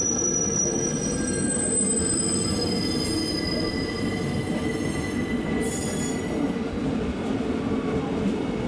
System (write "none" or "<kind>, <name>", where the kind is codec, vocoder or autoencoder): none